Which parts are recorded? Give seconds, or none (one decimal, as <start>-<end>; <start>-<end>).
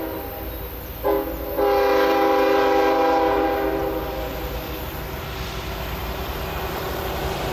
0.0-6.0; 7.0-7.5